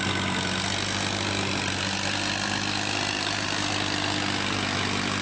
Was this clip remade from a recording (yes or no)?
no